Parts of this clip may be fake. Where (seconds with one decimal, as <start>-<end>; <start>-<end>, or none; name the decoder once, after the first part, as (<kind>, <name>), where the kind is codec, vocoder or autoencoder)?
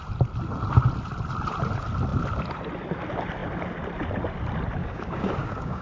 4.8-5.8 (codec, DAC)